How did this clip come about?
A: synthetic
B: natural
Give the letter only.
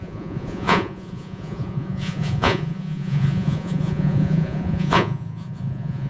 A